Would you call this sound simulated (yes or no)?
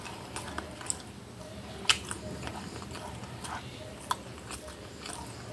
no